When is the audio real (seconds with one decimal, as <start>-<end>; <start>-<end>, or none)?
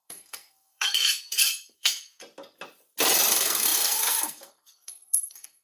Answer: 2.2-3.3